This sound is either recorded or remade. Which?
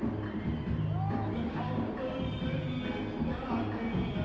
recorded